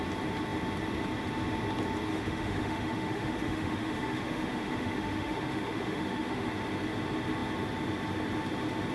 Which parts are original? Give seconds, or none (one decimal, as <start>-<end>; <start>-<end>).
0.0-2.1; 6.5-8.9

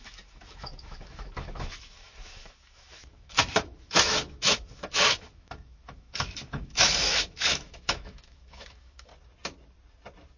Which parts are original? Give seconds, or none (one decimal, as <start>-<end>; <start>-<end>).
9.1-10.4

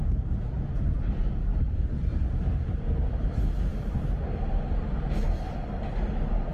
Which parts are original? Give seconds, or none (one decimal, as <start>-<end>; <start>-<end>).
0.0-6.5

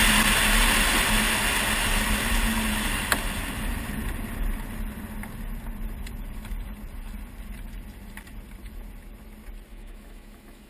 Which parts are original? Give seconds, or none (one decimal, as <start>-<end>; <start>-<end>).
0.0-9.7

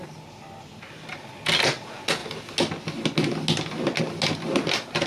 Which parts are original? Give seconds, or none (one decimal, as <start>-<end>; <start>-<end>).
0.0-5.1

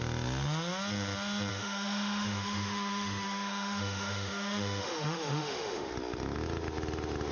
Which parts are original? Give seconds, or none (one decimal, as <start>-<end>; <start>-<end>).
0.0-1.5; 5.9-7.3

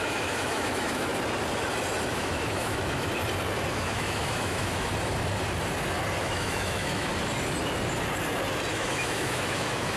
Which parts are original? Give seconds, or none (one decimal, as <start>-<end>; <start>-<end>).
1.1-2.1; 3.1-3.7; 4.9-6.2; 7.1-8.7

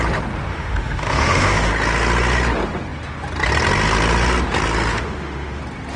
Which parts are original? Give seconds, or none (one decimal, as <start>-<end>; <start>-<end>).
0.0-0.5; 1.7-4.9; 5.6-6.0